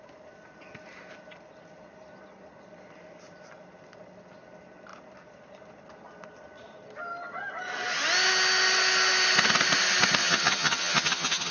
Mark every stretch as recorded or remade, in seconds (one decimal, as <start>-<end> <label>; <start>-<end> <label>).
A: 0.0-10.2 recorded; 10.2-11.5 remade